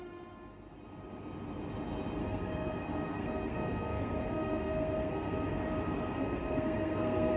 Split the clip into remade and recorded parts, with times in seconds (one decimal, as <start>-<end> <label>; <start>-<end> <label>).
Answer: 0.0-2.2 recorded; 2.2-5.6 remade; 5.6-6.2 recorded; 6.2-7.4 remade